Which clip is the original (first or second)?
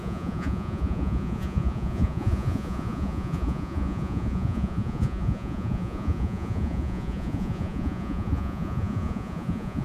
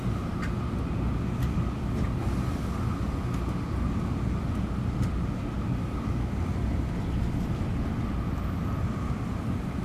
second